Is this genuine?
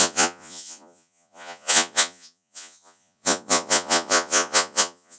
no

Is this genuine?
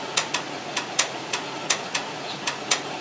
no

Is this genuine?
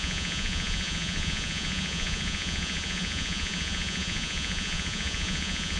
no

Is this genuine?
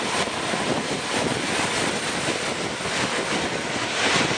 yes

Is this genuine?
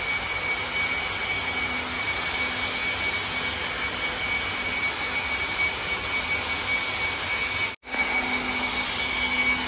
yes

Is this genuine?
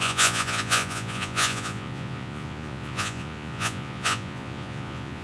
no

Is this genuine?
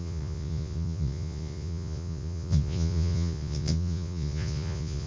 no